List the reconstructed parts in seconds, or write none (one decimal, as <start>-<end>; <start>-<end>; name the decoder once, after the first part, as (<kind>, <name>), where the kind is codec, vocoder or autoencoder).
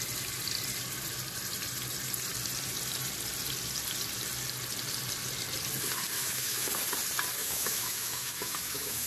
6.2-6.7 (autoencoder, DAC-VAE); 7.4-9.1